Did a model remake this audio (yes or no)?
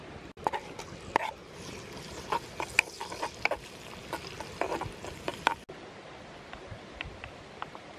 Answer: no